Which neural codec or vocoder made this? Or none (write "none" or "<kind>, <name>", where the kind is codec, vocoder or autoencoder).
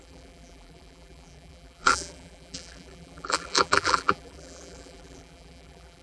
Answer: vocoder, BigVGAN v2